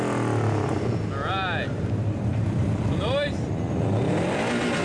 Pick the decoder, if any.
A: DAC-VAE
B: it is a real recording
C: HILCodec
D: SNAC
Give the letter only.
B